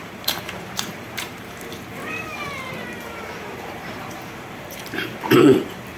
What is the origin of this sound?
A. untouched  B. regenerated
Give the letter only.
B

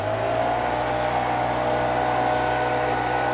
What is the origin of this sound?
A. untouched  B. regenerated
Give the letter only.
A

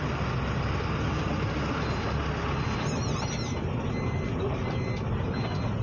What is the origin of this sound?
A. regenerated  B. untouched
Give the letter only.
B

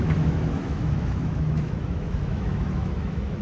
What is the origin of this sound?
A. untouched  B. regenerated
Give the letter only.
B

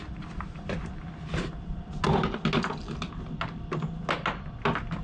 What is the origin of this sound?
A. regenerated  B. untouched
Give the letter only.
B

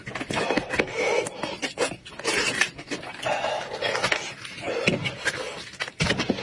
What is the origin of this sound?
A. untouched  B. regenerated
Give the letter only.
A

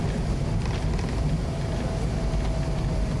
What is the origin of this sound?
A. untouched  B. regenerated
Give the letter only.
A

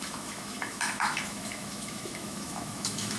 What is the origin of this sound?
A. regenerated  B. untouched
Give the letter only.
A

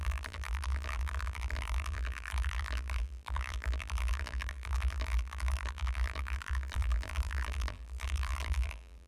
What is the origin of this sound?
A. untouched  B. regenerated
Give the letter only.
B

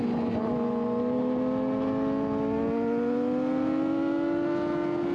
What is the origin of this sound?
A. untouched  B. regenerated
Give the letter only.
A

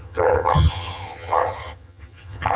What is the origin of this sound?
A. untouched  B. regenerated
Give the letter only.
B